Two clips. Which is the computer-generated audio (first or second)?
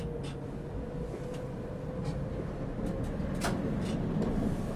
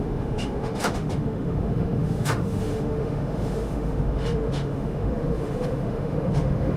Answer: second